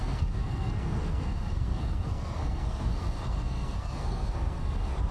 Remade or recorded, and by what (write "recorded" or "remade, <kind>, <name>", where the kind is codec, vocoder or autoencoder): remade, codec, SNAC